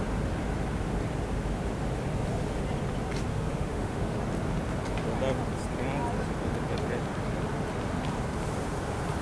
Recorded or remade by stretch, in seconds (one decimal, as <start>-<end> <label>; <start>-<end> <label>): 0.0-3.3 recorded; 3.3-4.2 remade; 4.2-9.2 recorded